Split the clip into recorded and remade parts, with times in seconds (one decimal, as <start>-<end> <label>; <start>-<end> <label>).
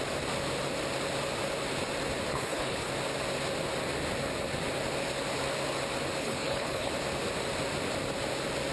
0.0-2.3 recorded; 2.3-2.9 remade; 2.9-6.2 recorded; 6.2-6.9 remade; 6.9-8.7 recorded